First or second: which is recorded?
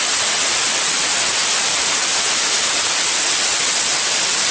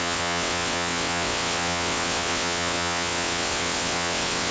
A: first